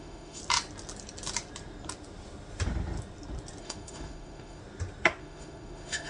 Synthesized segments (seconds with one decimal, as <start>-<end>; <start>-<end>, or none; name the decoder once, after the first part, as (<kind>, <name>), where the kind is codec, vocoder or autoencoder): 0.0-0.4 (autoencoder, DAC-VAE); 3.6-4.6; 5.2-6.1